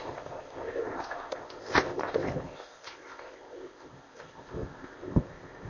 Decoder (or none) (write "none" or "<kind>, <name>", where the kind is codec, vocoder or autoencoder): codec, ZipCodec